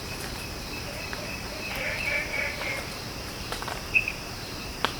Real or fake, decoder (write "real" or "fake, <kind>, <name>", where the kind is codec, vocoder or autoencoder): fake, vocoder, BigVGAN v2